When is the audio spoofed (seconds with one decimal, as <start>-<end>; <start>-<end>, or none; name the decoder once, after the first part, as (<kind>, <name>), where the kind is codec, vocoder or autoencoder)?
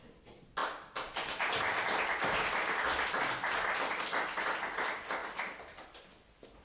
none